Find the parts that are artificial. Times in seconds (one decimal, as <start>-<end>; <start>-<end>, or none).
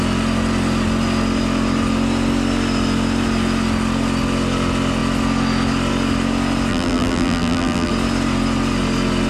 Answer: 6.7-7.9